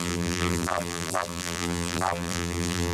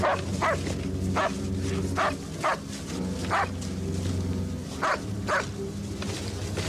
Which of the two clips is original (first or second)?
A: second